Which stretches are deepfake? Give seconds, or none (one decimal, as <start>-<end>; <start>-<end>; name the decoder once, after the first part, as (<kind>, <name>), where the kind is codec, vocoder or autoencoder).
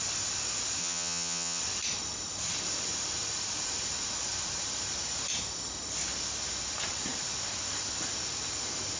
0.8-1.6 (vocoder, HiFi-GAN)